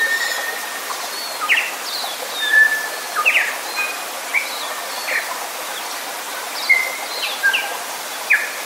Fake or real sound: real